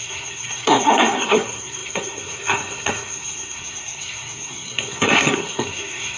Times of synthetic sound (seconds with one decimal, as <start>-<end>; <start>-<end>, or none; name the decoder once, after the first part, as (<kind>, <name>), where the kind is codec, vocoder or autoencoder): 0.0-6.2 (codec, SNAC)